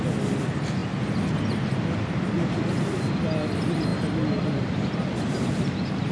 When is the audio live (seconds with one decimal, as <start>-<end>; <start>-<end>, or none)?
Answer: 0.0-6.1